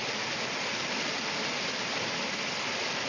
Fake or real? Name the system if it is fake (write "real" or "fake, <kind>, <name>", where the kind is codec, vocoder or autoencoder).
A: real